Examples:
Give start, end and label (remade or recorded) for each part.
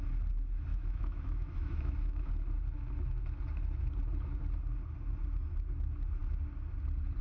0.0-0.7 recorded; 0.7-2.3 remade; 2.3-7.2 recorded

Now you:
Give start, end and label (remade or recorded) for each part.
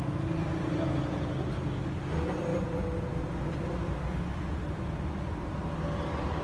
0.0-6.4 recorded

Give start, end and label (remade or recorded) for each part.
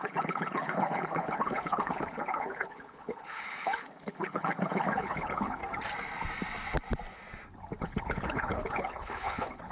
0.0-5.6 remade; 5.6-7.8 recorded; 7.8-9.7 remade